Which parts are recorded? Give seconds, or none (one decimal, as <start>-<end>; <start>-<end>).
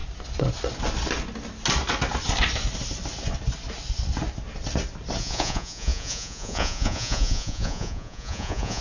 0.0-5.2